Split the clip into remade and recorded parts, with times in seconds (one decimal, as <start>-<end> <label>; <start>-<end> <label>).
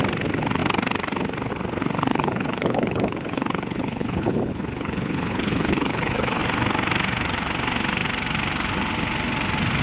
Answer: 0.0-2.1 recorded; 2.1-6.4 remade; 6.4-9.8 recorded